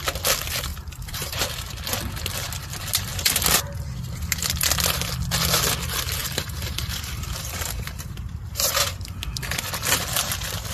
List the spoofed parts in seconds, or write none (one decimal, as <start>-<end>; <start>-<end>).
0.7-1.4; 6.2-8.8